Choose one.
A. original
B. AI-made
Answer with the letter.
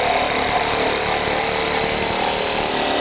A